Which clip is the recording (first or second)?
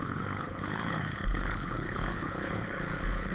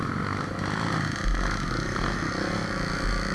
second